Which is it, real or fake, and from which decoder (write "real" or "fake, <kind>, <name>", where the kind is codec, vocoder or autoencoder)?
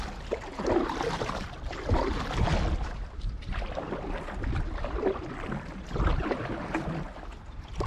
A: real